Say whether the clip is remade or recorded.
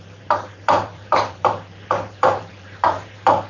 remade